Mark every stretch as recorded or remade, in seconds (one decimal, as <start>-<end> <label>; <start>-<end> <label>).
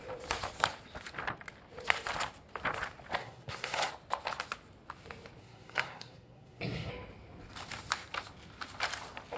0.0-3.2 recorded; 3.2-3.9 remade; 3.9-5.4 recorded; 5.4-6.9 remade; 6.9-9.4 recorded